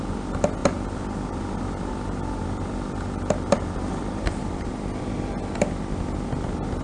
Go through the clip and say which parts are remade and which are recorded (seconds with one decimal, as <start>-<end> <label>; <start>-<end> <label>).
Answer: 0.0-0.6 recorded; 0.6-4.7 remade; 4.7-6.8 recorded